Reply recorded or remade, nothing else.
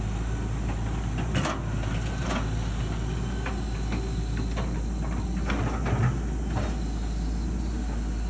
recorded